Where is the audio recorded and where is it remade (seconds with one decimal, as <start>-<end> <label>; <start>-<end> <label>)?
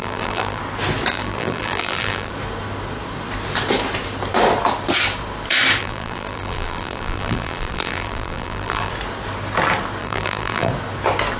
0.0-0.6 remade; 0.6-1.1 recorded; 1.1-2.3 remade; 2.3-5.8 recorded; 5.8-8.9 remade; 8.9-10.0 recorded; 10.0-10.7 remade; 10.7-11.4 recorded